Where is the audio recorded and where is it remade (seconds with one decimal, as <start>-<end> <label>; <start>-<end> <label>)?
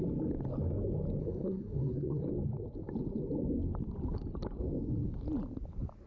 0.0-1.2 recorded; 1.2-2.3 remade; 2.3-6.1 recorded